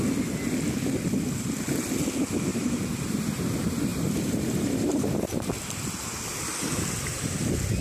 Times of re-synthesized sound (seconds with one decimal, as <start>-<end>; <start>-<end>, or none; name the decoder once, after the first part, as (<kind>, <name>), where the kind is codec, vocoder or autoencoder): 2.5-3.4 (vocoder, BigVGAN v2); 3.9-5.2